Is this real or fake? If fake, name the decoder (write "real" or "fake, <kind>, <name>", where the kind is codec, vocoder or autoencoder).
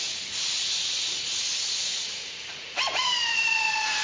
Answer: fake, vocoder, Vocos